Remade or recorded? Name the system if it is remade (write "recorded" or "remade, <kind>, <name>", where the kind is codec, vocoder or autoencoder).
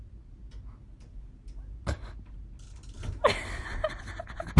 recorded